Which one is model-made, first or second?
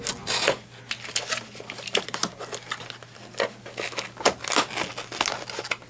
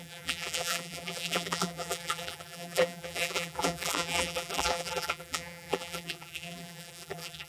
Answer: second